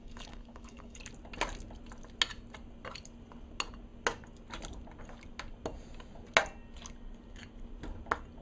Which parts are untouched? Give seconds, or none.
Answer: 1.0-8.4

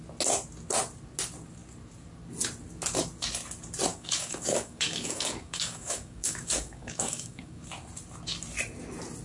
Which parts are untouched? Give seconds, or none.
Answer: 0.0-3.9; 7.6-9.2

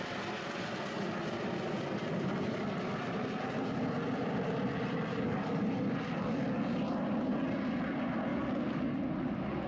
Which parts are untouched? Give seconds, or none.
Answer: 0.0-5.1; 5.6-8.3; 9.0-9.7

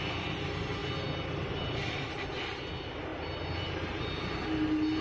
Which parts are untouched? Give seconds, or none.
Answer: 0.0-5.0